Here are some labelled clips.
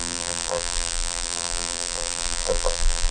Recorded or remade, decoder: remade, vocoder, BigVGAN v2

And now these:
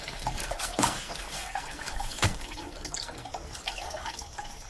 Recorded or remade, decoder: remade, codec, SNAC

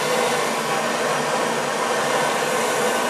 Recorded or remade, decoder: recorded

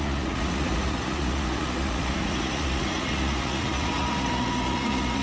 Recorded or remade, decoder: remade, vocoder, Vocos